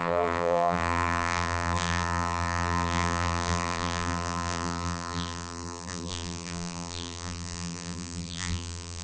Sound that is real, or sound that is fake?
fake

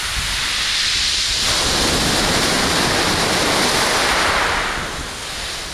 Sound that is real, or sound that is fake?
real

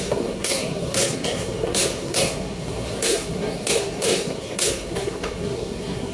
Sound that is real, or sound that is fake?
fake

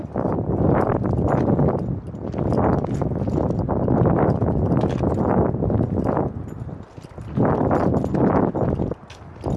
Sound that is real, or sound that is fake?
real